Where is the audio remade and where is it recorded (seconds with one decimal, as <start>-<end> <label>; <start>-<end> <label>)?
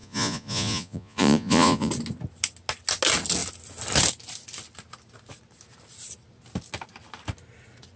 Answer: 0.0-1.9 remade; 1.9-8.0 recorded